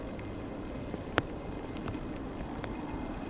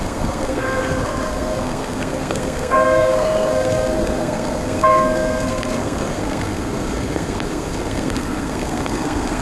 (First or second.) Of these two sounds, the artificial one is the second